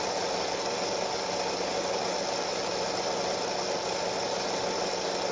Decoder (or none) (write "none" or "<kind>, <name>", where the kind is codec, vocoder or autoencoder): none